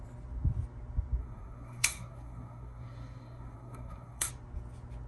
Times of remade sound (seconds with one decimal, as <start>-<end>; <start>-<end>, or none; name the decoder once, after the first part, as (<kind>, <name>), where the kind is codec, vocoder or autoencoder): 1.2-4.3 (codec, SNAC)